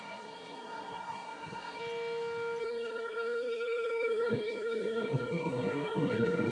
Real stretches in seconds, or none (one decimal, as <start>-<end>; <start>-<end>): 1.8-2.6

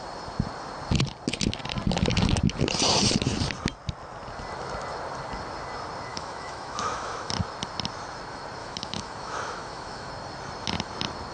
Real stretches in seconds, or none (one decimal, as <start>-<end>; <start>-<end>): 0.0-6.1; 7.3-8.6; 10.1-11.3

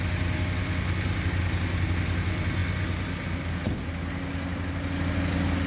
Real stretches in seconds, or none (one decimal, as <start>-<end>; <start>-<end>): 0.0-5.7

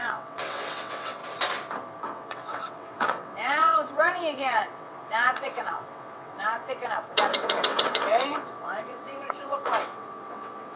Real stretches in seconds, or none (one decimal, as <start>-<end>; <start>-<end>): 1.2-2.0

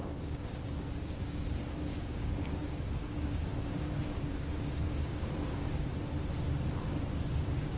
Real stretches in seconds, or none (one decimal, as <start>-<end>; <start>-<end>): 5.9-6.7

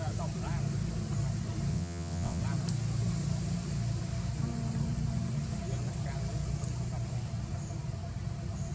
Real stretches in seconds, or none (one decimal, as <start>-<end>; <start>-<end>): 0.0-1.7; 2.4-8.7